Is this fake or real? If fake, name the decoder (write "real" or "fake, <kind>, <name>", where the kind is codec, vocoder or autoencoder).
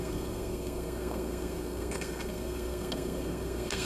fake, codec, SNAC